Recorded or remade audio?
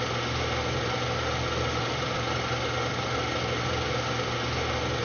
recorded